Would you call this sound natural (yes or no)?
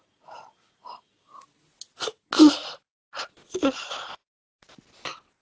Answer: yes